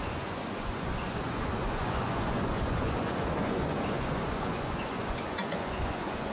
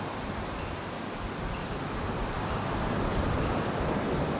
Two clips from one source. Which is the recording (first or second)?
second